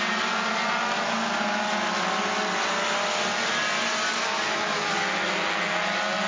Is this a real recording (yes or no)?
yes